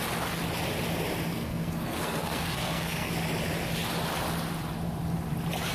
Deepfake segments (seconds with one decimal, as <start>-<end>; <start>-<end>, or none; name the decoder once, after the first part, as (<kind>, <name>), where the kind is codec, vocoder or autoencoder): 1.3-3.1 (codec, SNAC)